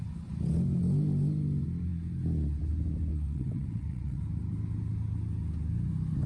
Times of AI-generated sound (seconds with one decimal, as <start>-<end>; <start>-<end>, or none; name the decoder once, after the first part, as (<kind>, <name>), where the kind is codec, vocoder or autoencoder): 3.1-4.2 (vocoder, WaveNeXt)